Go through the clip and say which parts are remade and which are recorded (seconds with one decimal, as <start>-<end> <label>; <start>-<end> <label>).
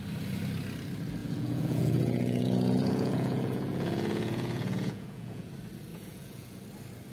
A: 0.0-1.2 recorded; 1.2-5.5 remade; 5.5-5.9 recorded; 5.9-6.6 remade; 6.6-7.1 recorded